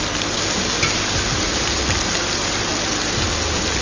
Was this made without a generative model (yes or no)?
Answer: yes